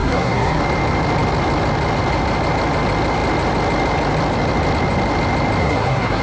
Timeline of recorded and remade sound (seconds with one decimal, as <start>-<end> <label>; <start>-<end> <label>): 0.0-0.6 remade; 0.6-5.6 recorded; 5.6-6.2 remade